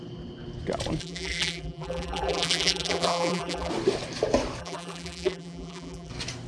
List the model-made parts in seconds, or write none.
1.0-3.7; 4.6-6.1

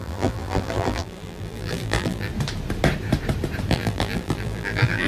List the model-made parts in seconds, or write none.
0.0-2.3; 3.7-5.1

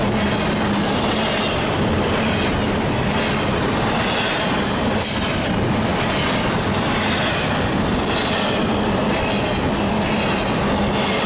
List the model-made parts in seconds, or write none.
none